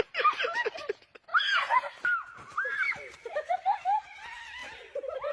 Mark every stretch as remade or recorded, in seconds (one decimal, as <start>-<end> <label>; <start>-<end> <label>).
0.0-1.3 remade; 1.3-3.1 recorded; 3.1-4.6 remade; 4.6-5.3 recorded